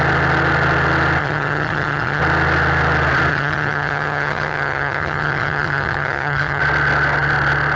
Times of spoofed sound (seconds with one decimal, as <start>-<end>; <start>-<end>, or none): 1.2-2.2; 3.3-6.6

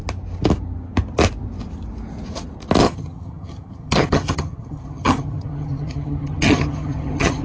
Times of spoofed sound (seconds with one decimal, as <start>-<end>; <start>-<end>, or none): 2.8-7.4